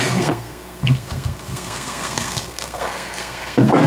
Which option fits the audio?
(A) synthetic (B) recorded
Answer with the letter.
A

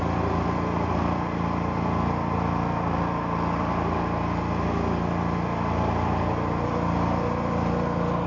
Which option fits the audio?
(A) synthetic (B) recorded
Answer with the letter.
B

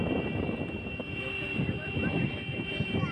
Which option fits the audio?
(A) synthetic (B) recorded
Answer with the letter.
A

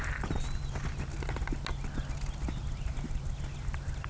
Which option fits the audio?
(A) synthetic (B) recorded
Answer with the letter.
B